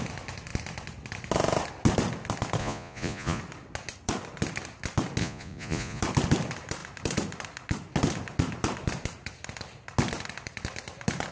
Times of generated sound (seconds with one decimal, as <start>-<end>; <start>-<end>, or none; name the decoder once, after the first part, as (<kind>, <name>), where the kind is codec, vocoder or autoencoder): 2.6-3.4 (vocoder, Vocos); 5.2-6.0